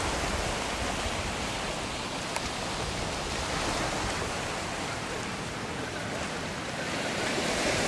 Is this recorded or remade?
recorded